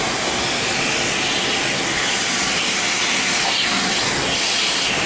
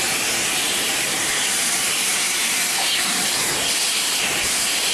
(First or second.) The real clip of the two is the first